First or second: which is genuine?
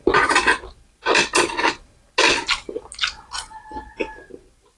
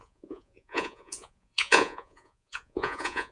first